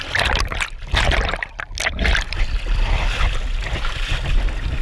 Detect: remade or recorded recorded